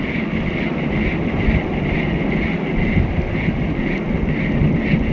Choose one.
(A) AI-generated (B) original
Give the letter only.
B